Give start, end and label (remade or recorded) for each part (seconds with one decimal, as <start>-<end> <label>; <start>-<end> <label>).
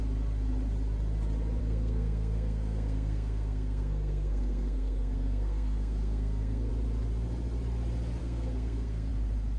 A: 0.0-1.6 recorded; 1.6-6.7 remade; 6.7-8.2 recorded; 8.2-9.1 remade; 9.1-9.6 recorded